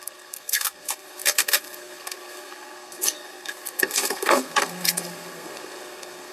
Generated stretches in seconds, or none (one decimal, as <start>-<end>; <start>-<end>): 0.0-6.3